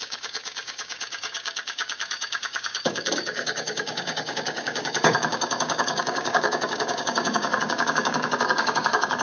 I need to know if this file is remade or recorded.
remade